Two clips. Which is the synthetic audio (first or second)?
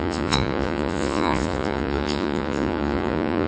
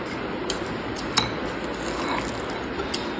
first